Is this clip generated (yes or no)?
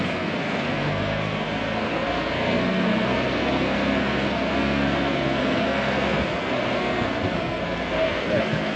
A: yes